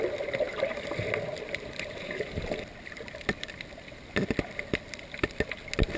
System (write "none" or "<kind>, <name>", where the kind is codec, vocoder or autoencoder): none